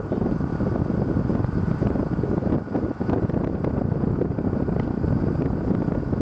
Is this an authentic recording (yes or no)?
yes